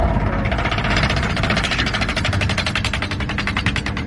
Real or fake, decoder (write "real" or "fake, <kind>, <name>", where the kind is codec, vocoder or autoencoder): real